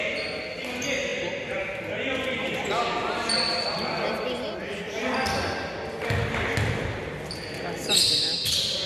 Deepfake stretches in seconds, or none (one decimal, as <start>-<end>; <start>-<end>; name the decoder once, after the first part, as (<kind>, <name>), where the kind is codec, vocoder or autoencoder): none